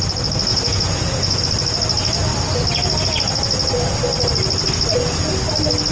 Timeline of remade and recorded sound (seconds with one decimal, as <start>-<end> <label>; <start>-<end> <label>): 0.0-0.5 recorded; 0.5-1.4 remade; 1.4-5.9 recorded